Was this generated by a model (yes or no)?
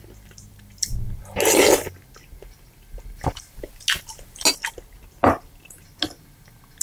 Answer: no